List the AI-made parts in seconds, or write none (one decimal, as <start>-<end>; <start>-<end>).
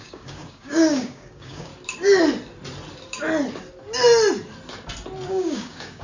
0.0-1.7; 5.3-6.0